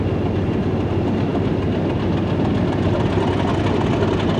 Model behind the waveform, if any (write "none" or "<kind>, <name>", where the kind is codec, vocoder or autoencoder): none